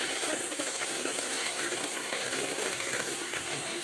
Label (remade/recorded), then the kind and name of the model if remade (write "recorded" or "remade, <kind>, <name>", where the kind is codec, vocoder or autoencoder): remade, codec, SNAC